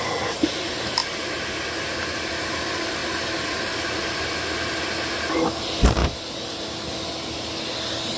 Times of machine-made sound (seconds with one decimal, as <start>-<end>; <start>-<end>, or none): none